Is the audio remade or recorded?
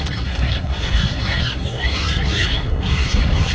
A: remade